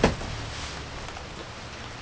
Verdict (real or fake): real